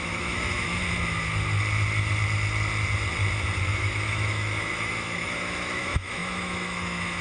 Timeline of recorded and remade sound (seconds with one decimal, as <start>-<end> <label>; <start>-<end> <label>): 0.0-0.8 remade; 0.8-3.6 recorded; 3.6-7.2 remade